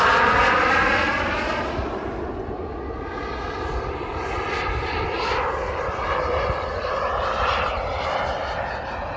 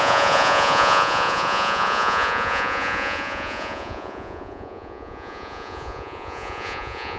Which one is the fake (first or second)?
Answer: second